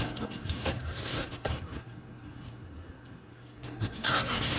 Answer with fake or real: fake